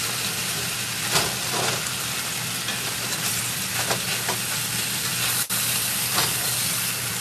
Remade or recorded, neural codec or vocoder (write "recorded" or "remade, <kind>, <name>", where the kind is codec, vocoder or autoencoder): remade, vocoder, BigVGAN v2